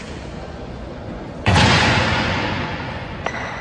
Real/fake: fake